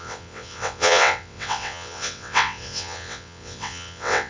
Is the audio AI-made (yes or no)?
yes